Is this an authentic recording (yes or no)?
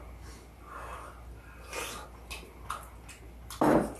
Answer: yes